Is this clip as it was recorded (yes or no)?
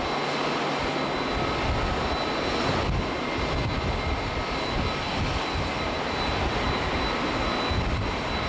yes